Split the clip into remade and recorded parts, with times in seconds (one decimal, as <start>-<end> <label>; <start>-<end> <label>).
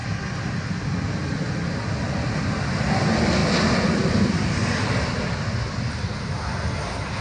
0.0-2.0 remade; 2.0-3.4 recorded; 3.4-5.3 remade; 5.3-7.2 recorded